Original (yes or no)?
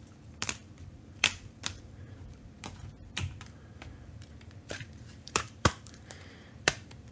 no